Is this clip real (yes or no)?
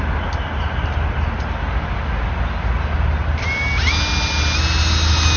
yes